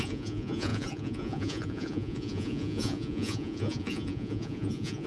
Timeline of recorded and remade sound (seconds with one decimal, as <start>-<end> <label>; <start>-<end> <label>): 0.0-5.1 remade

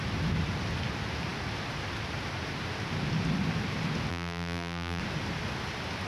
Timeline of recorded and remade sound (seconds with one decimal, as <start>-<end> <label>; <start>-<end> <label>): 0.0-4.1 recorded; 4.1-5.0 remade; 5.0-6.1 recorded

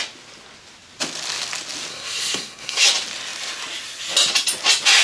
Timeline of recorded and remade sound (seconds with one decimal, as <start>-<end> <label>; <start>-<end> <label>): 0.0-1.9 recorded; 1.9-2.9 remade; 2.9-5.0 recorded

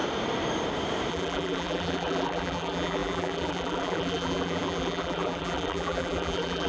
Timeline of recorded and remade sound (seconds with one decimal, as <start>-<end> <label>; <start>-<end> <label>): 0.0-1.1 recorded; 1.1-6.7 remade

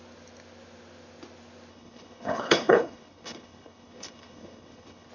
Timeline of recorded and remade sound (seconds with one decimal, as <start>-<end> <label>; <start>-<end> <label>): 0.0-1.7 recorded; 1.7-5.1 remade

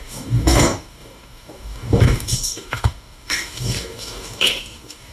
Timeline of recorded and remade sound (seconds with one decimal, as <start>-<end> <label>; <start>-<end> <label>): 0.0-5.1 remade

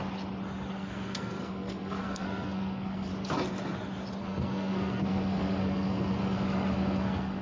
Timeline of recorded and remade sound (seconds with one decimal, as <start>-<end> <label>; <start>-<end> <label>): 0.0-0.7 recorded; 0.7-3.1 remade; 3.1-4.2 recorded; 4.2-7.4 remade

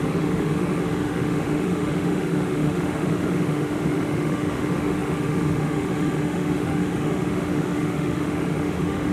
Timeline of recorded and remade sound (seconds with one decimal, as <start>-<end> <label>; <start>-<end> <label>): 0.0-9.1 remade